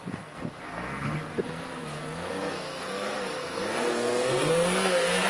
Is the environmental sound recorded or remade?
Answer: remade